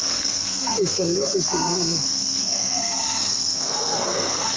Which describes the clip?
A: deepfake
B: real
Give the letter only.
A